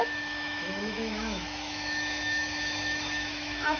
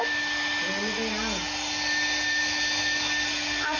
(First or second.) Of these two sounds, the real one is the second